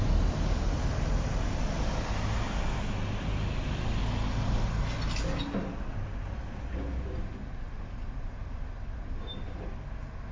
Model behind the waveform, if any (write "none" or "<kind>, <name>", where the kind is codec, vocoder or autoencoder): none